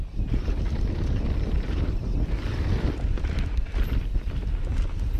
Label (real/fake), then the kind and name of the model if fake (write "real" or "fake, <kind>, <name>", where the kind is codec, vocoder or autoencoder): real